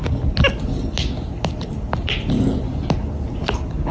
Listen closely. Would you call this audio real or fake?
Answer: real